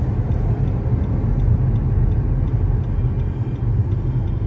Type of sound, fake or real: real